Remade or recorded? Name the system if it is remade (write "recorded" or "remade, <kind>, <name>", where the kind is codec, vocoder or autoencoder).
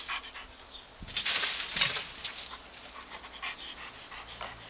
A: recorded